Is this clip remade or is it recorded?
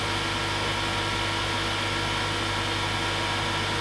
recorded